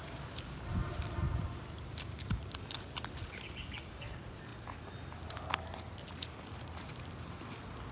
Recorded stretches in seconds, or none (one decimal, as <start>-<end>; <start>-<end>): 1.6-7.9